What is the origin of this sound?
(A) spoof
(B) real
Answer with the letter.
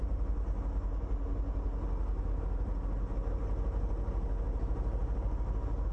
B